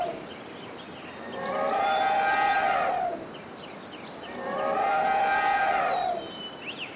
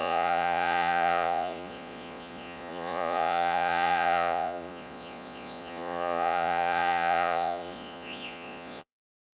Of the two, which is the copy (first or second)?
second